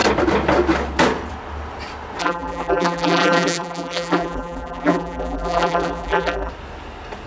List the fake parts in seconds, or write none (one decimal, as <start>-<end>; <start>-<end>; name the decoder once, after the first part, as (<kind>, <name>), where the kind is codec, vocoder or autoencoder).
2.2-6.5 (vocoder, BigVGAN v2)